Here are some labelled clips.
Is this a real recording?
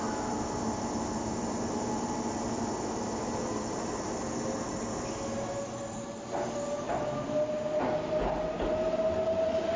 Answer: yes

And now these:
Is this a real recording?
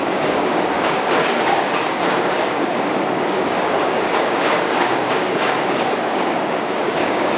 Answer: no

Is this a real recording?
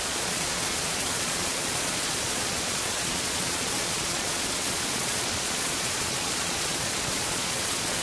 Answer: no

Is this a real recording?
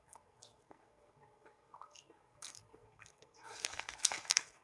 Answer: no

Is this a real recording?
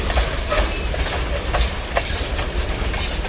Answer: yes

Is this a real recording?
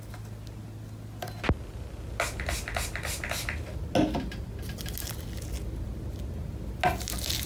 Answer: yes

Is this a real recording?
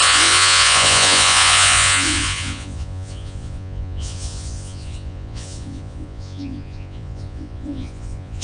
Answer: no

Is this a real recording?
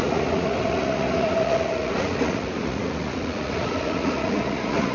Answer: no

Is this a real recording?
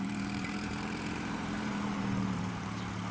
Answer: no